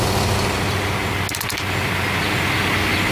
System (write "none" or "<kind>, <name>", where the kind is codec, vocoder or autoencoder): none